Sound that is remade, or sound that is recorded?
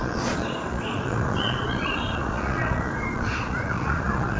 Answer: remade